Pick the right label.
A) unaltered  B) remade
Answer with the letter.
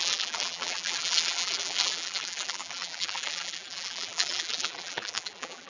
B